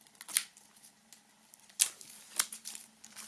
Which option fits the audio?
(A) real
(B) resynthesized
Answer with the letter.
A